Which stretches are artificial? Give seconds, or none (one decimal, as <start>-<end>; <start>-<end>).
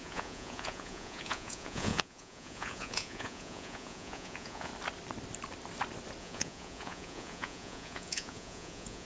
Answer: 0.0-4.7; 6.2-9.0